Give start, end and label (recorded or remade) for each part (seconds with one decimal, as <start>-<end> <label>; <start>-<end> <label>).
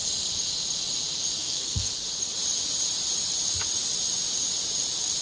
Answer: 0.0-1.4 recorded; 1.4-1.9 remade; 1.9-5.2 recorded